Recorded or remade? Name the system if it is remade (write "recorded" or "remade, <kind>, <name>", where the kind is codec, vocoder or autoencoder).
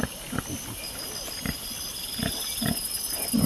recorded